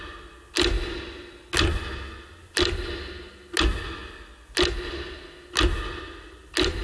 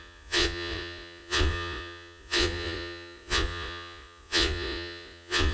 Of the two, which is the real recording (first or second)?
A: first